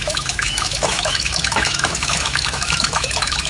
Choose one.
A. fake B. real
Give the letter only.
A